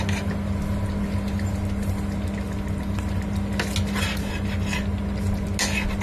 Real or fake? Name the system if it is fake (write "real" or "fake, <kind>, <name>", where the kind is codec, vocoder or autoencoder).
real